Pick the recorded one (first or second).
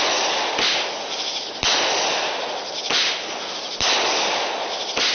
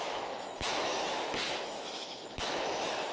first